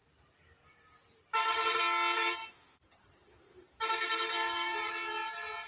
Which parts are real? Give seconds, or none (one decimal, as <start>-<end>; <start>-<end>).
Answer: 1.8-2.4; 4.9-5.7